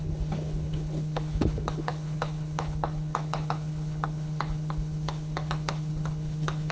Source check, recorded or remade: remade